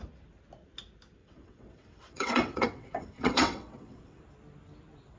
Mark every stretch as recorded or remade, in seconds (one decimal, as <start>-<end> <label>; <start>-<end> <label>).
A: 0.0-1.2 recorded; 1.2-4.2 remade; 4.2-5.2 recorded